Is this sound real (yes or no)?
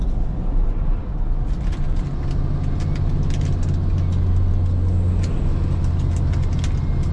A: yes